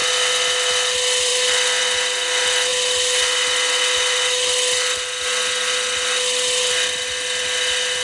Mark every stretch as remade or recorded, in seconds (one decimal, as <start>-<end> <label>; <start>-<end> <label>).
0.0-8.0 recorded